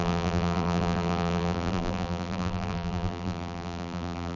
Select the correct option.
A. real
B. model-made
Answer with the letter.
B